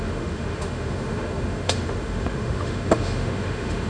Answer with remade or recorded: remade